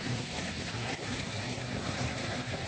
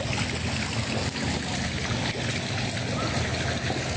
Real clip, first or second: second